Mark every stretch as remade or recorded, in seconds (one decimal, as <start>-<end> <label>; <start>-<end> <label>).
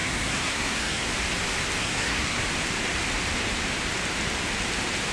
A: 0.0-1.1 remade; 1.1-1.8 recorded; 1.8-2.4 remade; 2.4-5.1 recorded